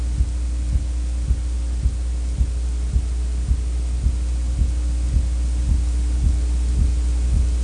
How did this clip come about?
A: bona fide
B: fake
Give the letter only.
A